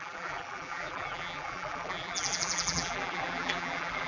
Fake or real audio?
fake